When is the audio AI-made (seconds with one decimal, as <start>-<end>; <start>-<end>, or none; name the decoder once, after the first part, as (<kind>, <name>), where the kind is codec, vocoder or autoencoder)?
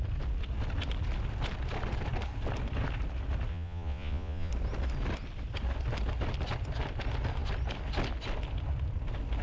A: 3.5-4.5 (vocoder, Vocos)